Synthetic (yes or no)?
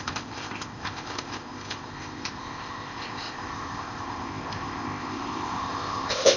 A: yes